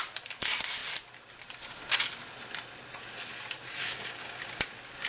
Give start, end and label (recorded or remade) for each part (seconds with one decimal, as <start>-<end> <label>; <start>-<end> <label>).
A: 0.0-3.8 recorded; 3.8-4.6 remade; 4.6-5.1 recorded